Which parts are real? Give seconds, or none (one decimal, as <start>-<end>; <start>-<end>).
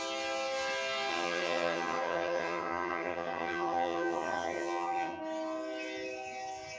0.0-1.1; 5.2-6.8